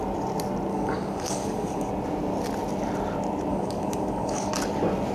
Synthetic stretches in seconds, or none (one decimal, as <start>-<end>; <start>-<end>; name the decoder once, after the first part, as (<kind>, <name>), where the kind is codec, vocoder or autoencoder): 0.7-1.9 (codec, DAC); 3.5-4.5

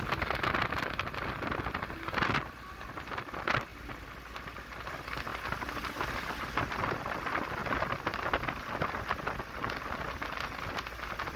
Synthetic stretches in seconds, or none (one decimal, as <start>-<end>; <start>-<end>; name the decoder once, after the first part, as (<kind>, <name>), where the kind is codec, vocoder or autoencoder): none

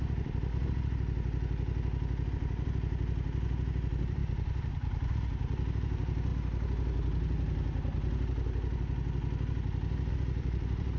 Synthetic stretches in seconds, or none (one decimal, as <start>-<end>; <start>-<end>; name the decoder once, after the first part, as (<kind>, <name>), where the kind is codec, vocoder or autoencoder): 0.0-0.5 (vocoder, BigVGAN v2); 2.3-6.3; 10.1-11.0

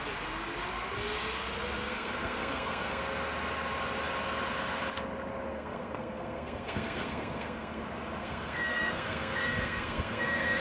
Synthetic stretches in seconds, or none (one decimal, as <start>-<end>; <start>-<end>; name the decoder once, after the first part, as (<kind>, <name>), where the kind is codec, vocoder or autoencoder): 1.8-3.0 (codec, SNAC); 5.5-7.8; 8.2-10.6

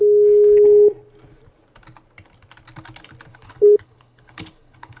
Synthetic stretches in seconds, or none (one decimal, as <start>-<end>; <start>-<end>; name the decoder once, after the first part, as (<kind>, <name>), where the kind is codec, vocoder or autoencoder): 3.3-5.0 (codec, HILCodec)

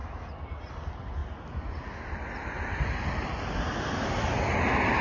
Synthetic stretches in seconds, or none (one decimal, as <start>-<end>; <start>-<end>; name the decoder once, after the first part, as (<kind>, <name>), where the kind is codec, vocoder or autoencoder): none

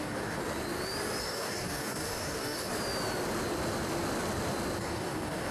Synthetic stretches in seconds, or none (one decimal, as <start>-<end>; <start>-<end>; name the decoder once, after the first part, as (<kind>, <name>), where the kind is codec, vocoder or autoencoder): 0.0-0.4 (codec, DAC); 1.2-2.7; 4.8-5.5

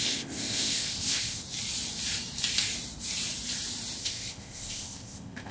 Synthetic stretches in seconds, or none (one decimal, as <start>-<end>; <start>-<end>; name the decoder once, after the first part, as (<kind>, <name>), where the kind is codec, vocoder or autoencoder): 0.0-1.4 (codec, ZipCodec); 4.0-5.5